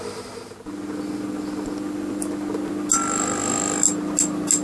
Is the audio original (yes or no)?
yes